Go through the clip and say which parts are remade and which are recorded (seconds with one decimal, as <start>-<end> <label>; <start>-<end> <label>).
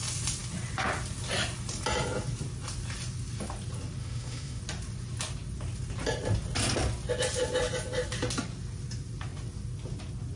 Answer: 0.0-4.0 recorded; 4.0-4.6 remade; 4.6-10.4 recorded